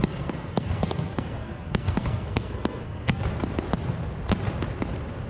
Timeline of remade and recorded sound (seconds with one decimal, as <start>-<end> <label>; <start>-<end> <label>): 0.0-3.2 remade; 3.2-5.3 recorded